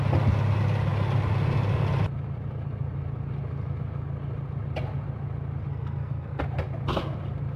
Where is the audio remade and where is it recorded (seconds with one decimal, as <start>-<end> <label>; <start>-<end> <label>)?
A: 0.0-5.7 recorded; 5.7-6.4 remade; 6.4-7.6 recorded